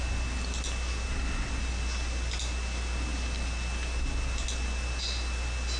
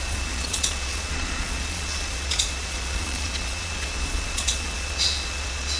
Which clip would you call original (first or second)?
first